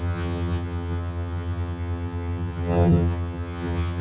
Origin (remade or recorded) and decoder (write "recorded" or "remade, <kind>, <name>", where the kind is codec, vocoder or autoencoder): remade, vocoder, HiFi-GAN